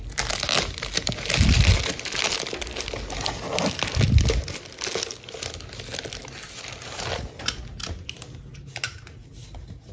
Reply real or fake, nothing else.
real